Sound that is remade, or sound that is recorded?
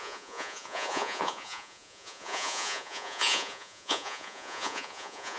remade